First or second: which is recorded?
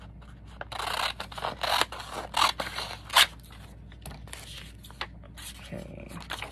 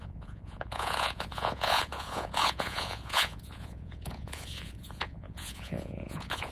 first